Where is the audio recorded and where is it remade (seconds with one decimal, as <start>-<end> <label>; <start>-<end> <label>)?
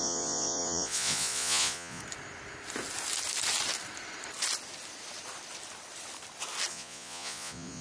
0.0-2.0 remade; 2.0-6.7 recorded; 6.7-7.8 remade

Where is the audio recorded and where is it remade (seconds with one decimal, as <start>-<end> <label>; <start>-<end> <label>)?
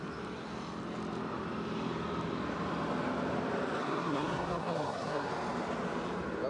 0.0-3.8 recorded; 3.8-5.3 remade; 5.3-6.5 recorded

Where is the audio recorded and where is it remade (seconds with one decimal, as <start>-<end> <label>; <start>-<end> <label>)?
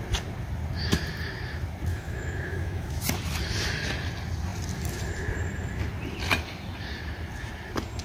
0.0-1.9 recorded; 1.9-3.0 remade; 3.0-8.0 recorded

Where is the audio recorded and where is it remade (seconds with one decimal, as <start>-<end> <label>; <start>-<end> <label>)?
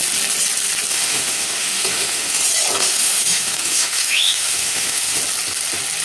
0.0-0.9 recorded; 0.9-2.4 remade; 2.4-2.8 recorded; 2.8-5.2 remade; 5.2-6.0 recorded